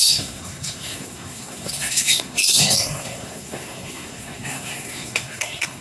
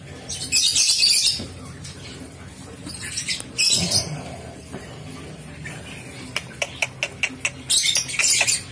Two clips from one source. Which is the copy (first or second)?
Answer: first